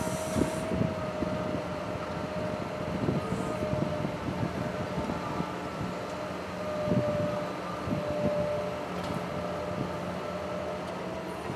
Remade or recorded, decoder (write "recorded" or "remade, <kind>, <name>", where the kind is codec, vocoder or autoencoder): recorded